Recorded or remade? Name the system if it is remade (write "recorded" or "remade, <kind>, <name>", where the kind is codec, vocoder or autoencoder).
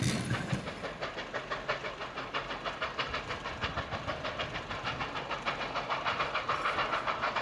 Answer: recorded